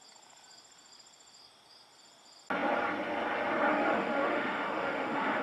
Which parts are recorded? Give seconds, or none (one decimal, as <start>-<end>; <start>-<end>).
0.0-3.7